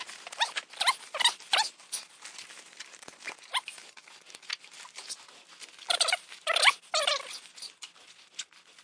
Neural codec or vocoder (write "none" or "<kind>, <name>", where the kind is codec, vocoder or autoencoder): none